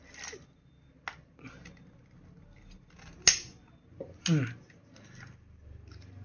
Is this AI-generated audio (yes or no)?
no